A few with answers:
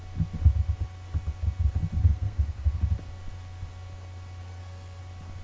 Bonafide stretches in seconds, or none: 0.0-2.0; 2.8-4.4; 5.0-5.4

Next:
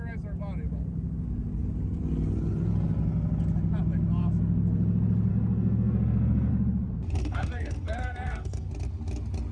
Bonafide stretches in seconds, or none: 0.0-5.3; 6.5-7.2; 8.7-9.5